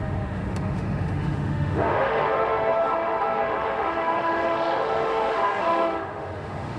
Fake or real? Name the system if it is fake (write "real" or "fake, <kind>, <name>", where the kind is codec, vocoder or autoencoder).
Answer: fake, autoencoder, DAC-VAE